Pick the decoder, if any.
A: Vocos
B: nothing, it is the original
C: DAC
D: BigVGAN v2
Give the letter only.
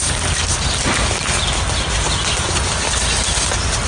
B